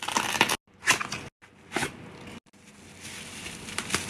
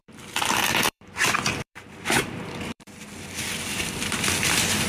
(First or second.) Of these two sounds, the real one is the first